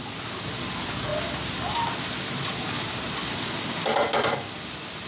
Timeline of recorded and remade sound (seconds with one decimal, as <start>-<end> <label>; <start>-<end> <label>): 0.0-5.1 recorded